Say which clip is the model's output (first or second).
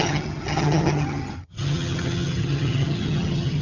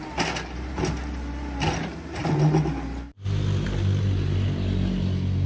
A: first